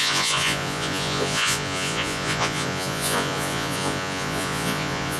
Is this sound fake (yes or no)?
yes